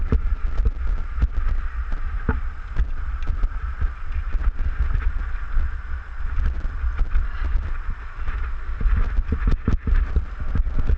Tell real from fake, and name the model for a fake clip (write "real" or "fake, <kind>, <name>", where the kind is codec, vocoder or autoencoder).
real